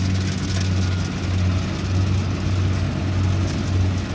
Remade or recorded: recorded